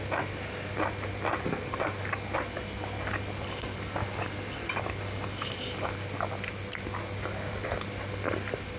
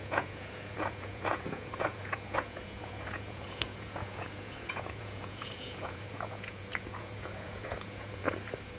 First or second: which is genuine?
first